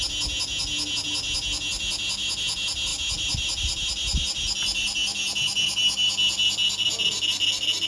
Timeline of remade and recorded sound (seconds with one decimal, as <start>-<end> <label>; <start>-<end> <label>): 0.0-7.9 recorded